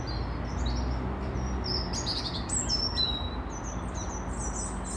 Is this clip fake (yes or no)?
no